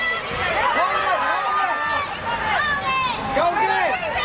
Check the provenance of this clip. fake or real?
real